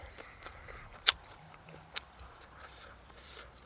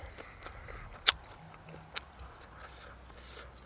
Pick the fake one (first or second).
first